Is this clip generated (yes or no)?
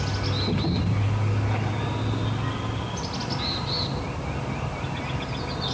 no